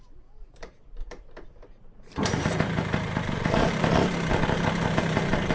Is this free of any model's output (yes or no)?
no